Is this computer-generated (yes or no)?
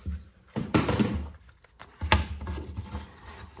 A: no